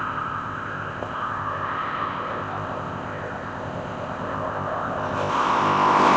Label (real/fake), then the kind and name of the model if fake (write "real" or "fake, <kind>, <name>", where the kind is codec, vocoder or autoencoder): fake, codec, ZipCodec